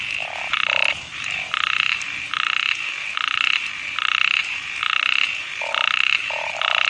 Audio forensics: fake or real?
fake